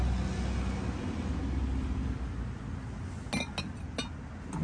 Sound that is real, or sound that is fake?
real